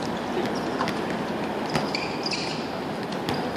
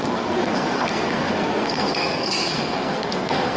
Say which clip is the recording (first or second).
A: first